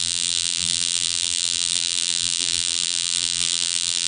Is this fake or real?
fake